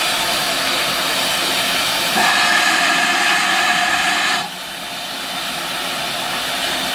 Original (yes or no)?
yes